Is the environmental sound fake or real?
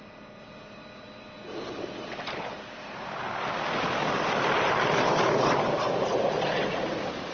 real